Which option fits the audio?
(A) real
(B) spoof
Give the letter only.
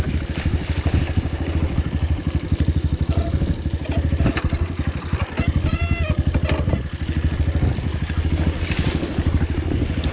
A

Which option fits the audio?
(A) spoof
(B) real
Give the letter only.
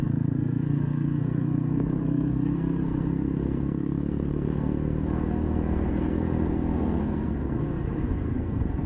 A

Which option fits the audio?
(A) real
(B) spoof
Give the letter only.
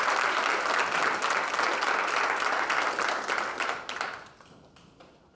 A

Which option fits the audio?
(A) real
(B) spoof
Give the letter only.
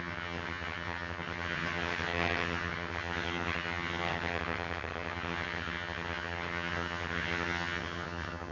B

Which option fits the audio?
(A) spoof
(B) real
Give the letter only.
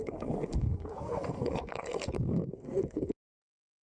A